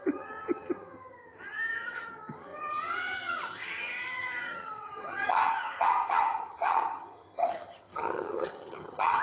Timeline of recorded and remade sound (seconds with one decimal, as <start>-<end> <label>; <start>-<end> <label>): 0.0-9.2 remade